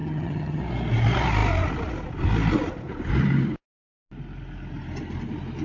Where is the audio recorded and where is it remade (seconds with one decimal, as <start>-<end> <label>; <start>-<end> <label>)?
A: 0.0-0.6 remade; 0.6-5.6 recorded